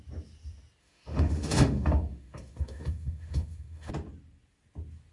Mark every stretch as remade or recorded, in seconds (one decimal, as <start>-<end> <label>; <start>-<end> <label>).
0.0-0.8 recorded; 0.8-3.9 remade; 3.9-5.1 recorded